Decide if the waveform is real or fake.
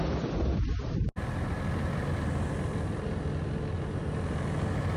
real